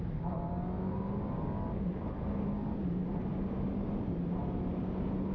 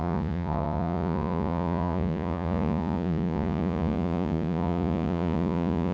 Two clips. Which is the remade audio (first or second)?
second